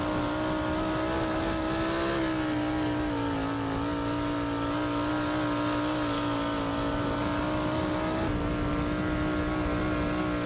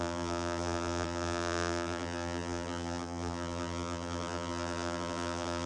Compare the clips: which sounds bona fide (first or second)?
first